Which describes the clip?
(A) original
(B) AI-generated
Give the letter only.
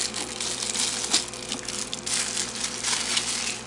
A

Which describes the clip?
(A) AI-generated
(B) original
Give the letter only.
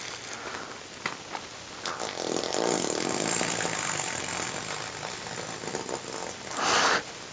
B